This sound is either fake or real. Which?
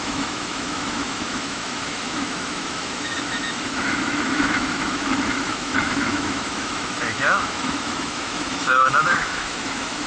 fake